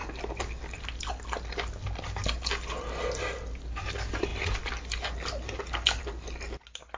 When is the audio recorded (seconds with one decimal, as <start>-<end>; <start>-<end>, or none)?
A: 0.0-7.0